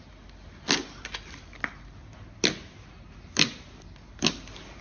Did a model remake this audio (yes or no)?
no